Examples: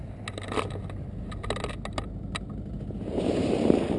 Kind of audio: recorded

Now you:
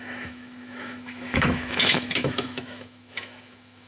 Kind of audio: remade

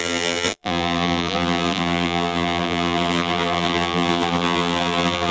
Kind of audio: remade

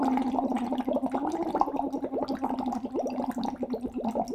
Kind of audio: recorded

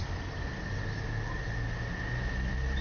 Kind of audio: recorded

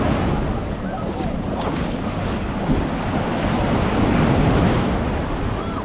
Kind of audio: recorded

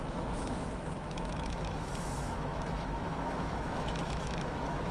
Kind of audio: remade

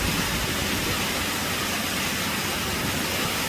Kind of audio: recorded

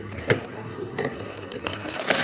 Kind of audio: remade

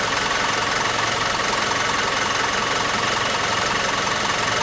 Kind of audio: recorded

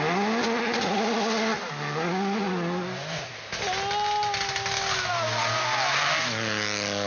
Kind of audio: recorded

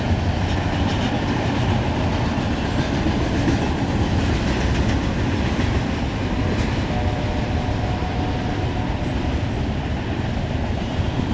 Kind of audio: recorded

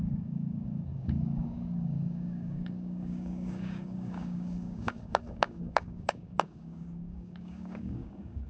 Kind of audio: remade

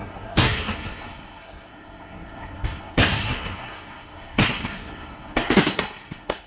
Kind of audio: remade